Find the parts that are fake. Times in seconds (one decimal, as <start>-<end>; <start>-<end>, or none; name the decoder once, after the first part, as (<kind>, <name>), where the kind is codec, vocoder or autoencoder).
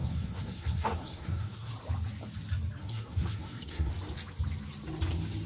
0.0-1.7 (codec, SNAC); 2.8-3.9